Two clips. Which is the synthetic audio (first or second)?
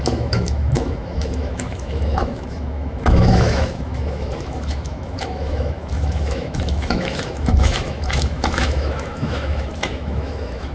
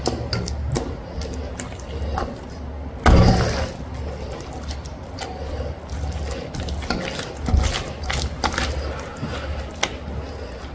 first